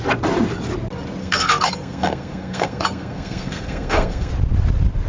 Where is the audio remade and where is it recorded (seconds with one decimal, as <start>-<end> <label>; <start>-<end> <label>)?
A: 0.0-1.2 recorded; 1.2-4.3 remade; 4.3-5.1 recorded